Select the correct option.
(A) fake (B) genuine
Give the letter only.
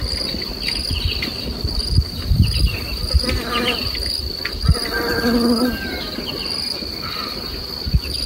B